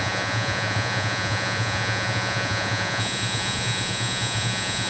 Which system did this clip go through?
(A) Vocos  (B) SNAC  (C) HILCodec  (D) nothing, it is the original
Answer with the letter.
A